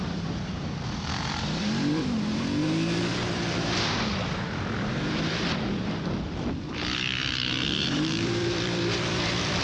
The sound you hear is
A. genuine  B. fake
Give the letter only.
B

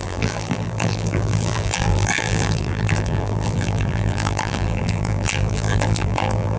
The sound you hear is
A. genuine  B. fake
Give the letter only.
B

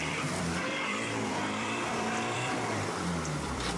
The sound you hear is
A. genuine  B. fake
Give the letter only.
B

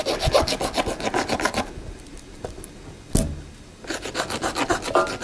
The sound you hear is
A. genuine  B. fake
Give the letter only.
A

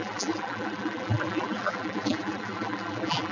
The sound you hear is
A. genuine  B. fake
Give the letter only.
B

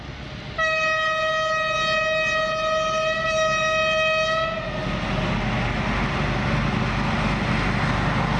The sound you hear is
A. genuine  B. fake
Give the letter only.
A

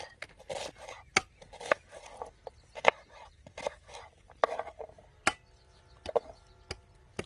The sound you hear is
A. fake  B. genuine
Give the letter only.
B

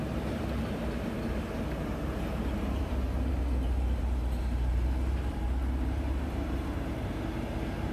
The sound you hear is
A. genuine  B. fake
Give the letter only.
B